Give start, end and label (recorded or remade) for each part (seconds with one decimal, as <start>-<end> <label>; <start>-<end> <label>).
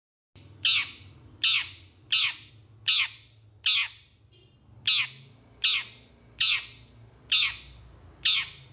0.0-8.7 recorded